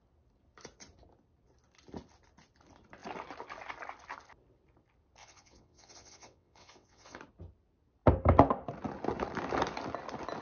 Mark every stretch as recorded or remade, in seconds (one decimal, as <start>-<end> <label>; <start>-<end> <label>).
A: 0.0-5.2 recorded; 5.2-7.2 remade; 7.2-10.4 recorded